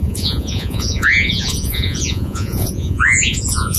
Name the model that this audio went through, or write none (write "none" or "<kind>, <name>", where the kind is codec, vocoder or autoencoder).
vocoder, Vocos